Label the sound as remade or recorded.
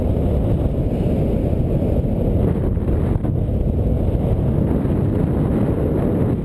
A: recorded